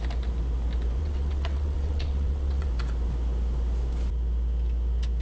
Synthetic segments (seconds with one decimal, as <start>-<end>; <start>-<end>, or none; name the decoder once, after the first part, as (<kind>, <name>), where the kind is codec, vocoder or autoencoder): 1.0-2.7 (vocoder, WaveNeXt)